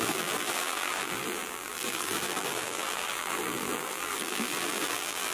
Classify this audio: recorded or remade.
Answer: remade